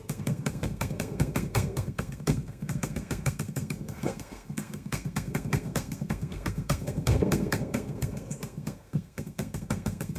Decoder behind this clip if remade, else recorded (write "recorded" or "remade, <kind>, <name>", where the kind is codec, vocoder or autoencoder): remade, codec, SNAC